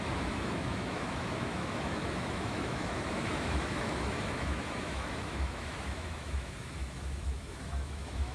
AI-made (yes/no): yes